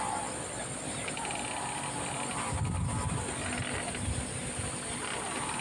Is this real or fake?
real